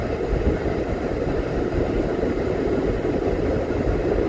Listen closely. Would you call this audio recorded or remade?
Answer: remade